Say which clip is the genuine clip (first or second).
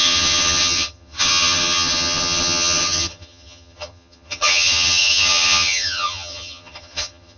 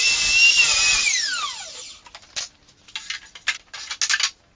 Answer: second